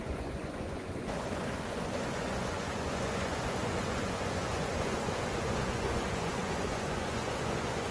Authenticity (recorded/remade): remade